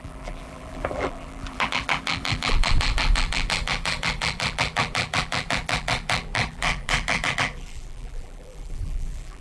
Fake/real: fake